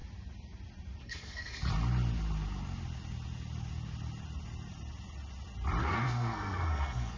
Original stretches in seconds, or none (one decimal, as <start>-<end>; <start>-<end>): 0.0-1.0; 1.6-5.8